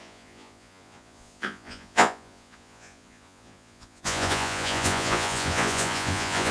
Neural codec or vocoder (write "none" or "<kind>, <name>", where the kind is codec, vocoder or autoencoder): vocoder, Vocos